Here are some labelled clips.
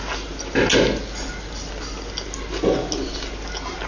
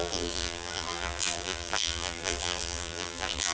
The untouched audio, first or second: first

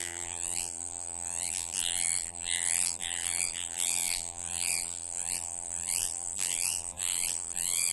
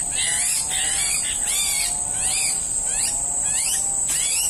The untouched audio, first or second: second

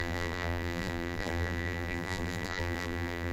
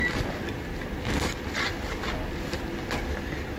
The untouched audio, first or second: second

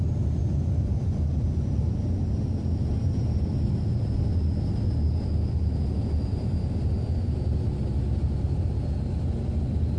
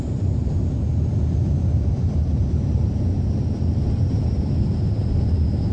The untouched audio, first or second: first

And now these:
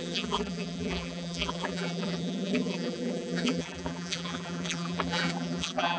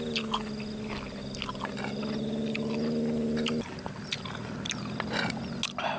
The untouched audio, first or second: second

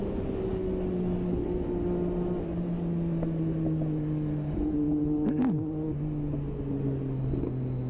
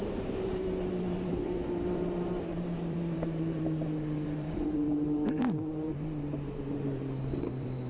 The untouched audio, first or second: first